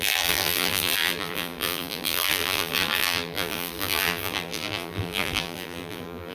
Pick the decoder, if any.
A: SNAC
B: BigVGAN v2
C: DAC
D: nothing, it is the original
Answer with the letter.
B